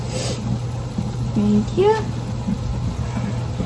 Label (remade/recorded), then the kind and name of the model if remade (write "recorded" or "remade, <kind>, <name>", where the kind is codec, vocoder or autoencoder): recorded